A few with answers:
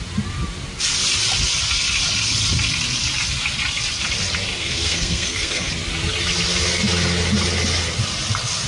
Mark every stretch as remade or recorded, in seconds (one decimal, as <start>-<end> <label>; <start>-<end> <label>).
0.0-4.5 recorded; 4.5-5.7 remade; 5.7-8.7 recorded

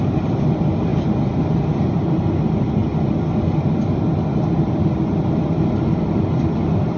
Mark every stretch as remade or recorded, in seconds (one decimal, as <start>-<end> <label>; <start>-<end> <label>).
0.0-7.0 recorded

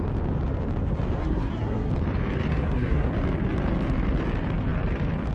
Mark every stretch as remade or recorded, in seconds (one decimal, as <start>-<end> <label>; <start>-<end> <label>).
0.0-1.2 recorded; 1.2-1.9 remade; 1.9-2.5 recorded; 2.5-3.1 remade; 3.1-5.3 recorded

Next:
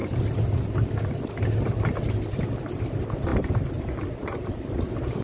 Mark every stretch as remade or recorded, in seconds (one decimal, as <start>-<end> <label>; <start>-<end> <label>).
0.0-3.3 recorded; 3.3-3.9 remade; 3.9-5.2 recorded

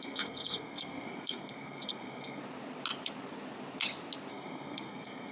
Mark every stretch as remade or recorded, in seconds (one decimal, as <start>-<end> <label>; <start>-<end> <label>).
0.0-2.4 remade; 2.4-4.3 recorded; 4.3-5.3 remade